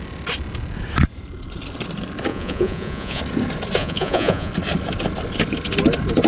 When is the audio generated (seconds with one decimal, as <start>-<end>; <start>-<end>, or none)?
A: 2.3-3.2; 3.8-4.5